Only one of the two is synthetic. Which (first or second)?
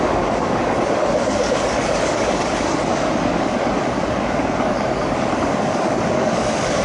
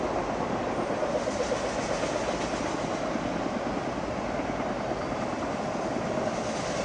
first